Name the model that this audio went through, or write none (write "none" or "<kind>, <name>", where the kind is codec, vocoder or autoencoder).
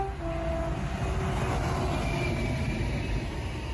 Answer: none